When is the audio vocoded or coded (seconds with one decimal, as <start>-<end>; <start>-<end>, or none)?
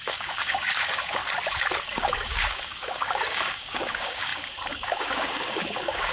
0.0-1.2; 1.8-6.1